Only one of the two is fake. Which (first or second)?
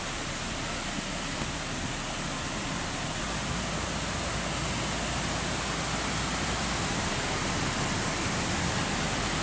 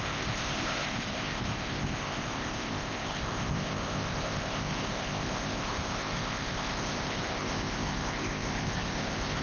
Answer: second